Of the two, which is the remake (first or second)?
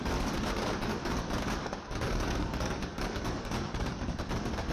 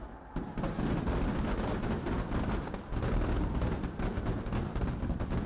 first